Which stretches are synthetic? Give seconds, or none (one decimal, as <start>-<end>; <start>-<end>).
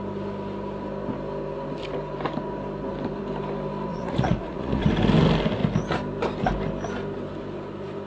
3.9-4.9